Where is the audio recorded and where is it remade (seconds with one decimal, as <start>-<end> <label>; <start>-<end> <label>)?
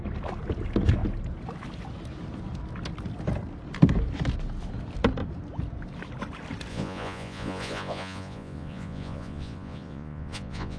0.0-6.7 recorded; 6.7-10.8 remade